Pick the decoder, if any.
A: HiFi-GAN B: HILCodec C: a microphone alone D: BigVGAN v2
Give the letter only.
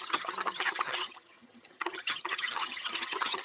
A